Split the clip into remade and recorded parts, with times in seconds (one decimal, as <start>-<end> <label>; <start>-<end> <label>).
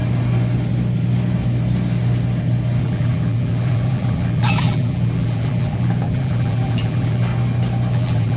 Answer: 0.0-2.8 recorded; 2.8-7.3 remade; 7.3-7.9 recorded; 7.9-8.4 remade